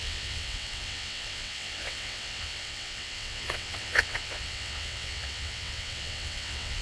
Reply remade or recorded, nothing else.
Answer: remade